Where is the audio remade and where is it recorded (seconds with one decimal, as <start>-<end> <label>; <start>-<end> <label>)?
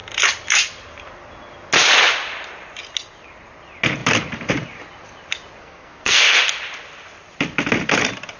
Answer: 0.0-5.6 recorded; 5.6-6.4 remade; 6.4-8.4 recorded